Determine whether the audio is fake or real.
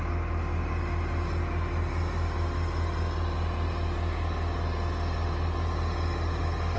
real